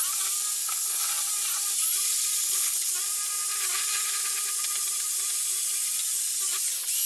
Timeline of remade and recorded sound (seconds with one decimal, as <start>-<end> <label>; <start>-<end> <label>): 0.0-0.6 recorded; 0.6-1.1 remade; 1.1-2.4 recorded; 2.4-2.9 remade; 2.9-7.1 recorded